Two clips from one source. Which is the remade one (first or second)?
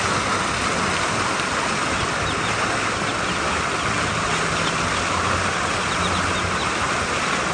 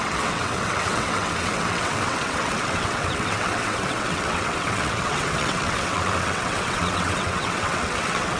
second